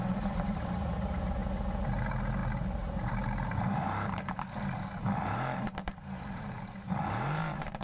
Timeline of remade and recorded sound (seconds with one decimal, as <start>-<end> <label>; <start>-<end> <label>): 0.0-1.4 remade; 1.4-2.0 recorded; 2.0-7.8 remade